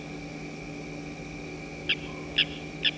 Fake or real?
real